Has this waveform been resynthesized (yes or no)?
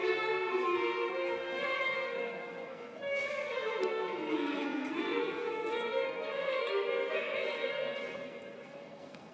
yes